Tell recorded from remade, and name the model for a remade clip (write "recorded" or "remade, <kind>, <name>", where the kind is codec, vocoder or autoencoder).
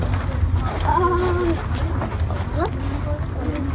recorded